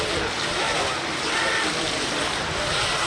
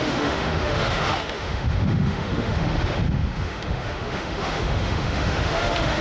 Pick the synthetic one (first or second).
second